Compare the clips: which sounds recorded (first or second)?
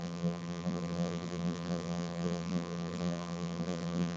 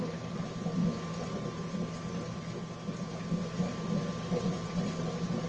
second